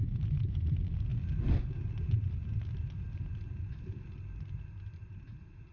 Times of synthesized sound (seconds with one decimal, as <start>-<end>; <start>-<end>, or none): none